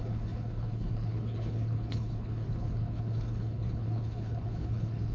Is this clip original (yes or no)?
no